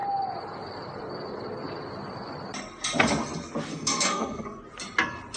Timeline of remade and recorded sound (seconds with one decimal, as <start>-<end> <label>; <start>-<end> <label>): 0.0-3.7 recorded; 3.7-4.6 remade; 4.6-5.4 recorded